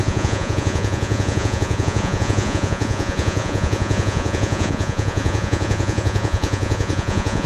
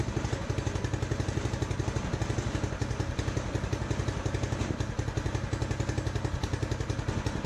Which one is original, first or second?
second